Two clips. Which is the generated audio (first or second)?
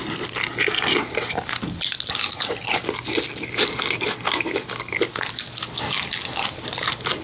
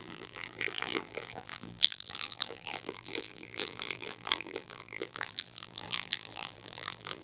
second